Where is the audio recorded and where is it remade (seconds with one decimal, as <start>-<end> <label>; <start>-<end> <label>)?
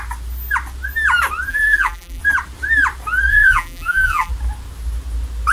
0.0-1.5 recorded; 1.5-2.2 remade; 2.2-3.3 recorded; 3.3-4.3 remade; 4.3-5.5 recorded